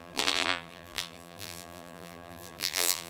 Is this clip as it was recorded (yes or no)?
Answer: no